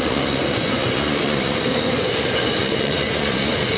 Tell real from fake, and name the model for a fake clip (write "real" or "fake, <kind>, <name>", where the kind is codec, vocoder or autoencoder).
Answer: fake, vocoder, Vocos